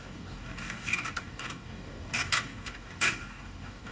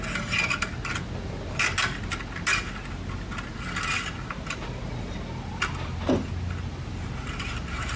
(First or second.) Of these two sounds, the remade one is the first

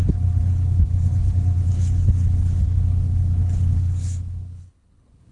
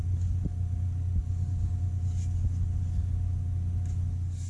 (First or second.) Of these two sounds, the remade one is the first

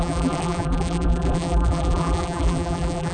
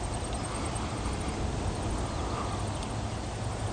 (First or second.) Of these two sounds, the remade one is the first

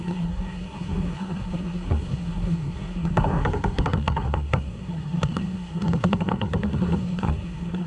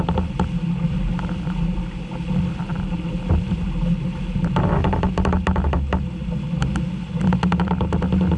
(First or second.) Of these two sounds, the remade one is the first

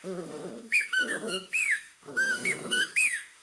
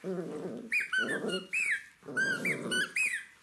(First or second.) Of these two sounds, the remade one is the first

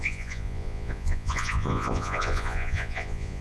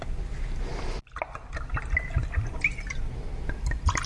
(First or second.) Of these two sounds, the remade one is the first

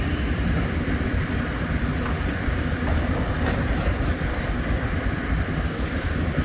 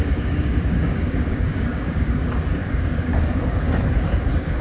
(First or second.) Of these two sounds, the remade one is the second